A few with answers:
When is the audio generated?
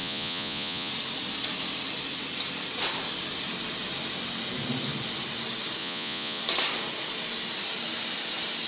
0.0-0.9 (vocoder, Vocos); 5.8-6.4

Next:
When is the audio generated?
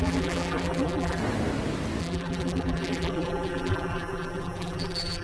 0.0-1.2 (vocoder, BigVGAN v2); 2.0-5.2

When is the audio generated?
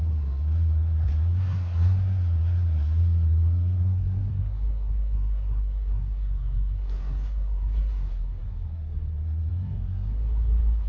0.0-10.9 (codec, SNAC)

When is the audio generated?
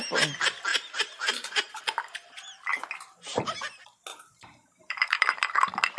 0.7-1.8 (vocoder, BigVGAN v2); 2.7-3.6; 4.1-5.5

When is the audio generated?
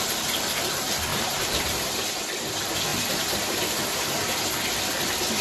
1.1-2.1 (vocoder, BigVGAN v2); 2.9-4.1